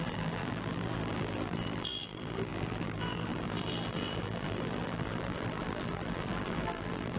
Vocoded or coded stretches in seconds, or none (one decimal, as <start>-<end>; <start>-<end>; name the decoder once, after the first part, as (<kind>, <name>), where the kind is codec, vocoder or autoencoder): 0.0-7.2 (vocoder, BigVGAN v2)